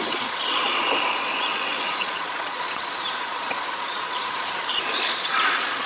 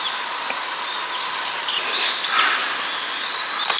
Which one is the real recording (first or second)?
second